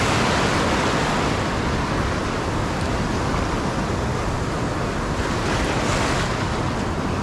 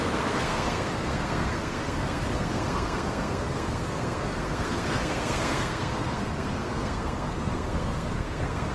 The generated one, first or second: second